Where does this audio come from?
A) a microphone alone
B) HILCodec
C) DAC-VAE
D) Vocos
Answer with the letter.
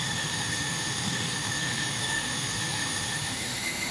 C